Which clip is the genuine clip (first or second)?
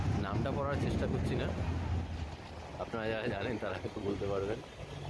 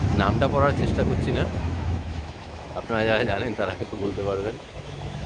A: first